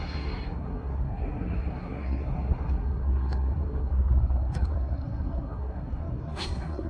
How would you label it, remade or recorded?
remade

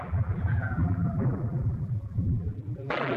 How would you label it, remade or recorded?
remade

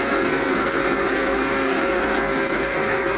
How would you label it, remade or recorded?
remade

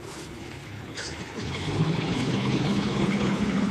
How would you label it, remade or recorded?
remade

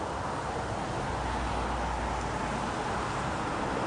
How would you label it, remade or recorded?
recorded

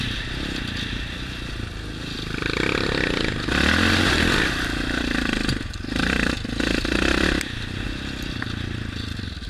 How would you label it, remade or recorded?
recorded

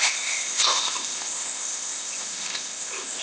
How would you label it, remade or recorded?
remade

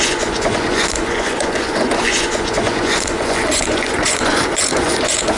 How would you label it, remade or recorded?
remade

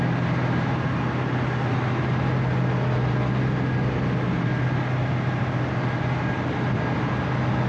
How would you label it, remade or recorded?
recorded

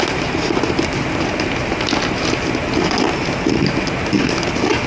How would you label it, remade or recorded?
recorded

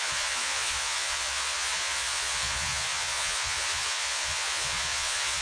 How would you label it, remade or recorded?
remade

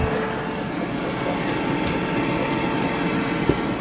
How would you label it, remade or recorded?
recorded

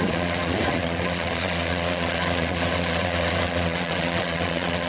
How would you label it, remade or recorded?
remade